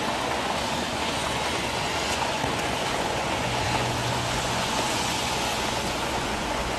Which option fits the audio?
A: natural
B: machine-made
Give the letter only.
B